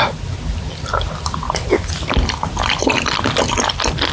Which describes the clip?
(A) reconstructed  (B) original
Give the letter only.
B